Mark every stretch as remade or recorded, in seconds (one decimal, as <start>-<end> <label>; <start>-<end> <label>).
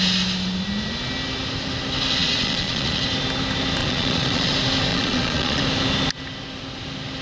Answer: 0.0-2.2 recorded; 2.2-3.0 remade; 3.0-3.8 recorded; 3.8-4.5 remade; 4.5-4.9 recorded; 4.9-5.6 remade; 5.6-7.2 recorded